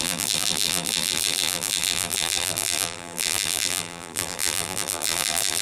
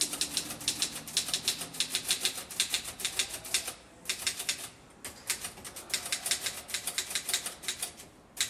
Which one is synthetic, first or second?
first